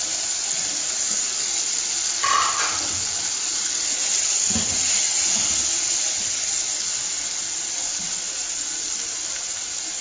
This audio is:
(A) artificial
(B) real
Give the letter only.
B